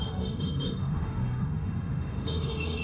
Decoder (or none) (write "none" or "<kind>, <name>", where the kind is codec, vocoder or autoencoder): autoencoder, DAC-VAE